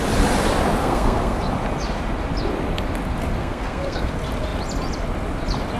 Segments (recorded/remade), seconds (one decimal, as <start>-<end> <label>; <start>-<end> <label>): 0.0-0.8 recorded; 0.8-1.4 remade; 1.4-3.4 recorded; 3.4-4.1 remade; 4.1-5.8 recorded